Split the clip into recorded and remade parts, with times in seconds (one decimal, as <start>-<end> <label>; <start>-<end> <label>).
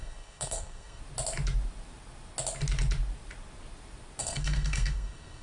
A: 0.0-1.0 remade; 1.0-4.2 recorded; 4.2-5.4 remade